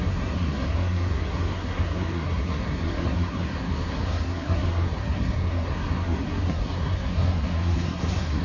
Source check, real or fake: fake